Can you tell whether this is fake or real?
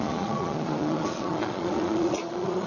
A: fake